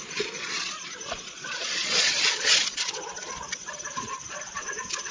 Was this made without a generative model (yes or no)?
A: no